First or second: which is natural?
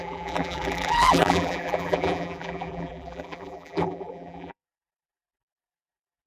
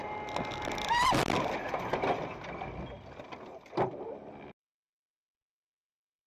second